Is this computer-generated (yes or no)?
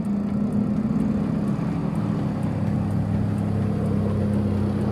no